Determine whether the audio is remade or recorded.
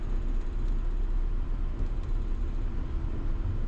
recorded